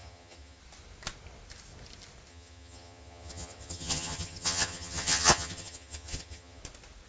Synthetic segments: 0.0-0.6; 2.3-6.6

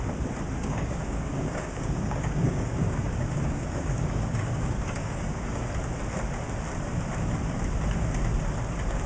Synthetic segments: 0.6-5.7

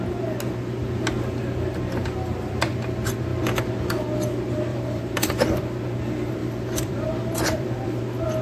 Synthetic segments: 2.0-2.6; 4.7-5.6; 6.4-8.0

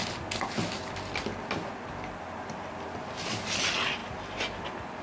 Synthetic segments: none